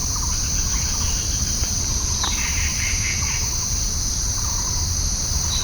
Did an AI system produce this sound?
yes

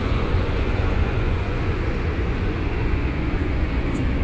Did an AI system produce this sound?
yes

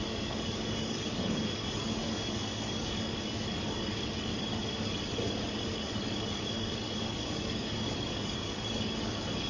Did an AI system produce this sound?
yes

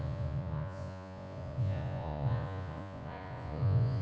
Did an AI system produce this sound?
yes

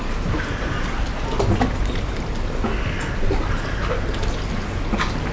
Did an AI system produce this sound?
no